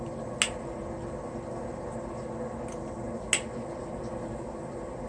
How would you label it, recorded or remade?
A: recorded